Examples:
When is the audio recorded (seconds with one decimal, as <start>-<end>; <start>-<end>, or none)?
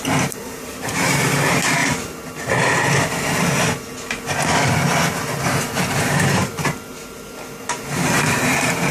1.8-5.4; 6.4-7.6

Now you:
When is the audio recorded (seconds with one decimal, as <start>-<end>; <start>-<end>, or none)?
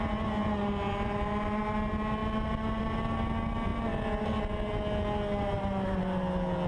0.0-6.7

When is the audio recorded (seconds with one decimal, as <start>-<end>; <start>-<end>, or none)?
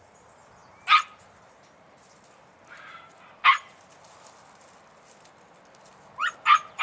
0.0-6.8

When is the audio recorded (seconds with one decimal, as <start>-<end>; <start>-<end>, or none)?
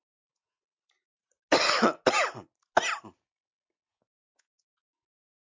0.7-3.9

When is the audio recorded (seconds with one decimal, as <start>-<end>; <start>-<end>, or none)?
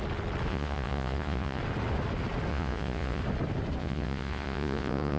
0.0-0.5; 1.6-2.5; 3.2-3.8